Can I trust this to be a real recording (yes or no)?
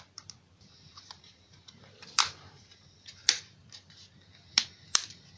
no